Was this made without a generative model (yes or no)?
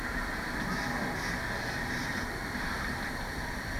yes